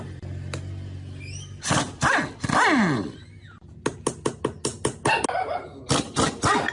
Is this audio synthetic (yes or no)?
no